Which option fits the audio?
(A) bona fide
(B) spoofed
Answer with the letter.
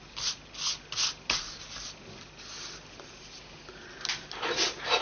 A